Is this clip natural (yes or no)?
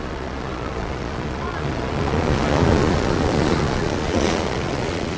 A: no